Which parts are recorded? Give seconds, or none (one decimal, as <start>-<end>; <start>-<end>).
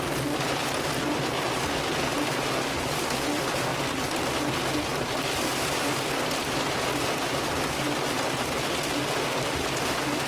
0.0-10.3